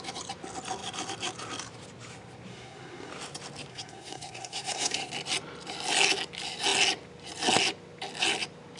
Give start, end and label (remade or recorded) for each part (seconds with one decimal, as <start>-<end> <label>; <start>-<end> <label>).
0.0-2.5 recorded; 2.5-3.1 remade; 3.1-3.7 recorded; 3.7-5.1 remade; 5.1-8.8 recorded